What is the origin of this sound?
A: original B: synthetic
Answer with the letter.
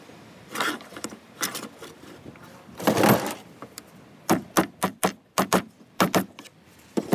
B